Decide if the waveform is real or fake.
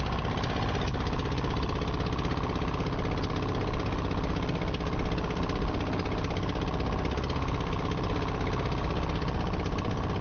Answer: real